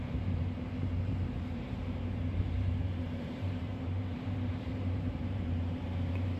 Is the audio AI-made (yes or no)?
yes